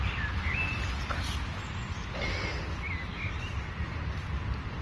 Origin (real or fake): real